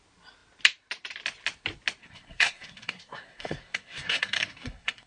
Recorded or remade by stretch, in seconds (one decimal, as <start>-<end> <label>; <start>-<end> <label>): 0.0-2.0 recorded; 2.0-5.1 remade